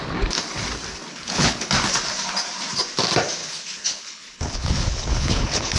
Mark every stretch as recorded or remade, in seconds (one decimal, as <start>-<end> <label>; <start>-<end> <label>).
0.0-1.1 recorded; 1.1-1.7 remade; 1.7-3.4 recorded; 3.4-5.8 remade